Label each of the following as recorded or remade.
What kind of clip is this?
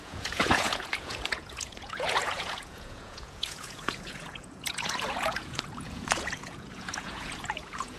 remade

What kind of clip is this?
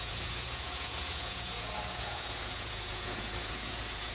remade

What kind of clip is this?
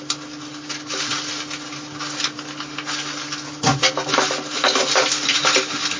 recorded